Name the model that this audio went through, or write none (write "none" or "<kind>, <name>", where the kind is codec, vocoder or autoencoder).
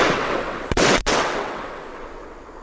vocoder, WaveNeXt